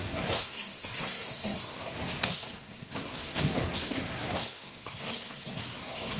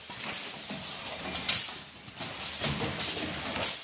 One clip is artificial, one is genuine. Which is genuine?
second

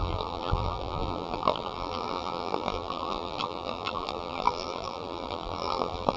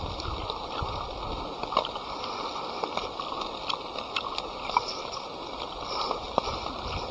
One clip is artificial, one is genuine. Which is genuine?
second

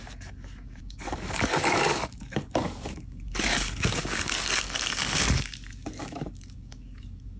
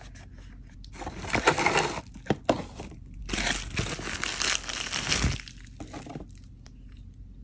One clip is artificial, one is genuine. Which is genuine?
second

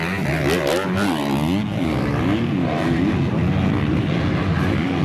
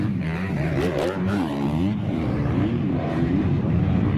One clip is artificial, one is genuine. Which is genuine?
first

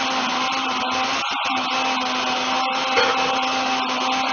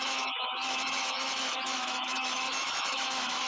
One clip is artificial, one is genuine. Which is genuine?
first